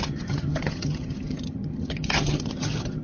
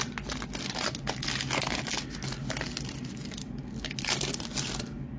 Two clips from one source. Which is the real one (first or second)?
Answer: second